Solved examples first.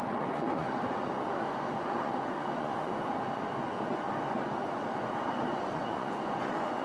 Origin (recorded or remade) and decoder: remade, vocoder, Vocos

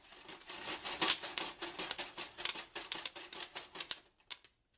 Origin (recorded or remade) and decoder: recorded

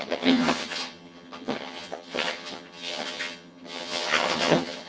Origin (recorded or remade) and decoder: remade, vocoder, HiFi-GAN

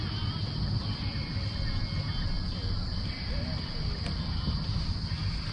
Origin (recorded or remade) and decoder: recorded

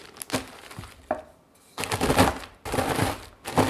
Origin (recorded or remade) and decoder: recorded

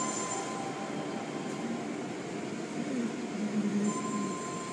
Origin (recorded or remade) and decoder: recorded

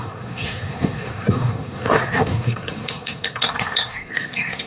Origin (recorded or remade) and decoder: remade, codec, SNAC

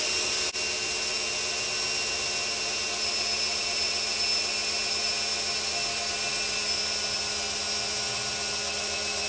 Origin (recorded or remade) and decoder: recorded